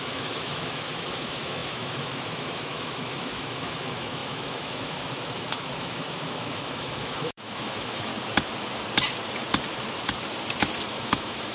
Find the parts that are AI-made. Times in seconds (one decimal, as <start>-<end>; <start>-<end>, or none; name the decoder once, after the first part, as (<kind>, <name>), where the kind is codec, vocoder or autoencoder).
0.0-8.1 (autoencoder, DAC-VAE); 10.9-11.5